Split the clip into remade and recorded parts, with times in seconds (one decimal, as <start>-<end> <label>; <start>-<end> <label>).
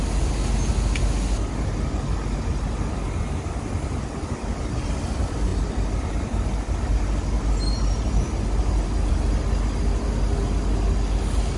0.0-11.6 recorded